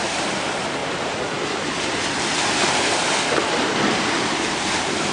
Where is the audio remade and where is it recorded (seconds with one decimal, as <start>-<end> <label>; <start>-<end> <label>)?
0.0-5.1 recorded